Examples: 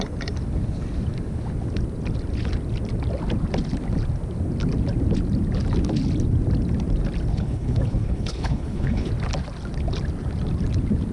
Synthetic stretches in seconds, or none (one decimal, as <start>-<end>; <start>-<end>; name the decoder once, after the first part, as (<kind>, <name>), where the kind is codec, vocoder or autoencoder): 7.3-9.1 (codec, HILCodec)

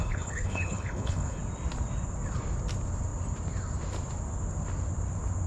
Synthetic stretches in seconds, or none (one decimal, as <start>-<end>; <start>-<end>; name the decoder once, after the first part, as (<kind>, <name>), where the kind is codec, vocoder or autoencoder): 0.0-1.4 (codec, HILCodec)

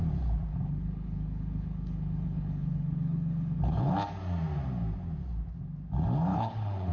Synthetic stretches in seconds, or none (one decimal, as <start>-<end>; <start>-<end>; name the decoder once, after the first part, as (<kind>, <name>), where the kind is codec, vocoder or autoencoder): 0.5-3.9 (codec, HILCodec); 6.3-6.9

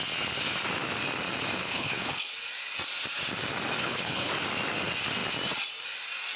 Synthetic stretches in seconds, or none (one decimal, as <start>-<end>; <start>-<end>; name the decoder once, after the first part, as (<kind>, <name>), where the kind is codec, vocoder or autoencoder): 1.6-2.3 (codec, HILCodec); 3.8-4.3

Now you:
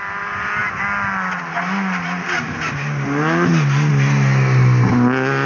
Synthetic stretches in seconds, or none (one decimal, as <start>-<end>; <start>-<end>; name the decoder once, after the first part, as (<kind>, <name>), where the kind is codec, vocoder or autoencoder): none